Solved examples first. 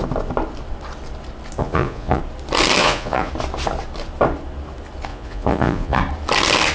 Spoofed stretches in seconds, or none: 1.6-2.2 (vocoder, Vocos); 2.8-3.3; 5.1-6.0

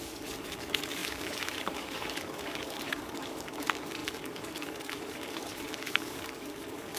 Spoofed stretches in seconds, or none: 0.0-7.0 (codec, DAC)